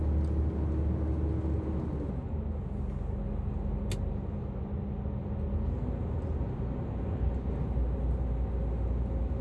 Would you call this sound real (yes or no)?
yes